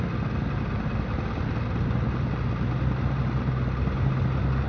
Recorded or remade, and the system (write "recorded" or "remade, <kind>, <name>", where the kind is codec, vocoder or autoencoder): recorded